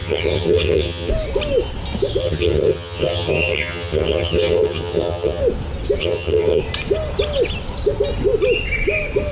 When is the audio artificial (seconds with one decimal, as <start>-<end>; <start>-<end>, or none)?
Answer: 0.0-1.1; 2.2-5.4; 6.0-6.6